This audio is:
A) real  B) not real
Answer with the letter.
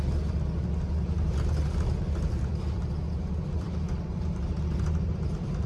A